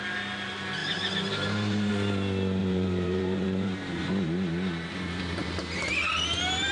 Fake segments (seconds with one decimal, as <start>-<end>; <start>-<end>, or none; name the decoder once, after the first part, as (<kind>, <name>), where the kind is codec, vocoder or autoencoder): 0.8-1.9 (vocoder, BigVGAN v2); 2.6-4.0